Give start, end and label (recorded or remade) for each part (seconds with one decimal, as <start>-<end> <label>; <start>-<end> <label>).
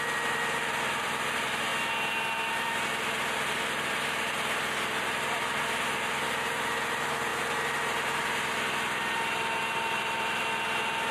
0.0-1.7 remade; 1.7-2.5 recorded; 2.5-7.3 remade; 7.3-9.7 recorded; 9.7-11.1 remade